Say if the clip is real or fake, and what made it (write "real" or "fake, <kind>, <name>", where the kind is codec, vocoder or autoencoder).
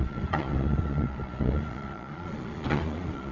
fake, vocoder, Vocos